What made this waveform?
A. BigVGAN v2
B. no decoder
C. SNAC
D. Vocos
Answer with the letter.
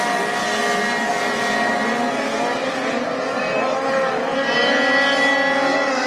B